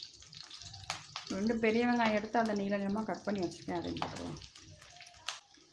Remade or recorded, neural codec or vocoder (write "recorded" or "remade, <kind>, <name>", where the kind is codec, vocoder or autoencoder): recorded